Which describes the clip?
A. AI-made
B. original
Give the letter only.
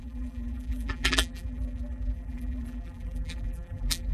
A